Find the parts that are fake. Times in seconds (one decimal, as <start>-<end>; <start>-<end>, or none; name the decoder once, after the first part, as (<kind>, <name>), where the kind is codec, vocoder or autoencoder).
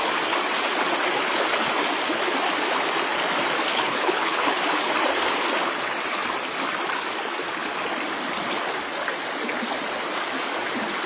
3.7-4.6 (codec, HILCodec)